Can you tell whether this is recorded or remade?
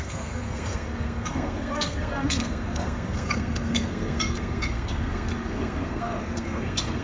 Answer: remade